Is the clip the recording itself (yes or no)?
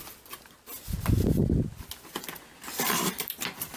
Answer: yes